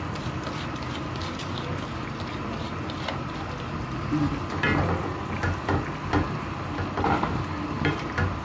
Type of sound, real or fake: real